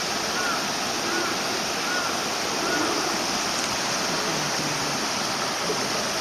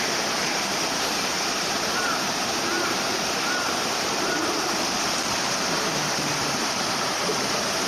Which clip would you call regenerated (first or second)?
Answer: second